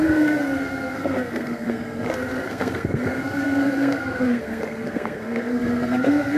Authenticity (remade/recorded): remade